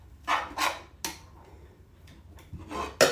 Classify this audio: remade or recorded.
recorded